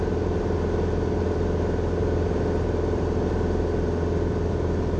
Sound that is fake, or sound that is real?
real